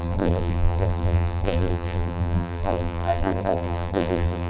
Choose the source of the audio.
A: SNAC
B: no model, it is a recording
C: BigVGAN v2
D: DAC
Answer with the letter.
C